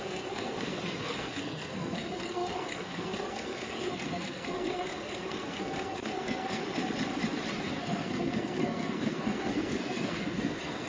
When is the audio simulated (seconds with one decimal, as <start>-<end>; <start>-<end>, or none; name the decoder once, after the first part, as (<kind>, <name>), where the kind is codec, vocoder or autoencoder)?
0.0-6.6 (codec, SNAC); 7.6-10.9